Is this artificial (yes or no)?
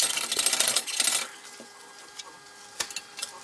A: no